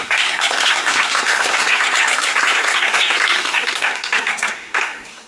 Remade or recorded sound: remade